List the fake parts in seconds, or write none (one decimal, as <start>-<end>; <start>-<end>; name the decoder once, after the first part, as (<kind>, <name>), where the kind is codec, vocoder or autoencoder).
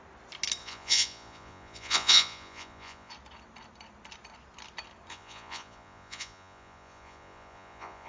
0.6-3.1 (vocoder, Vocos); 5.1-8.1